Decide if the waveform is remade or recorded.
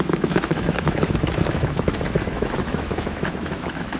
remade